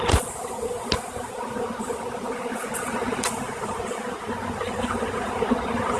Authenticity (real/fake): fake